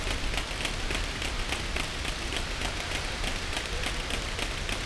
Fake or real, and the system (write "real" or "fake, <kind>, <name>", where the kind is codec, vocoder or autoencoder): real